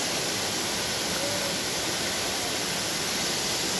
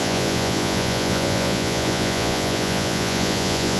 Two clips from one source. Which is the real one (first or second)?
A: first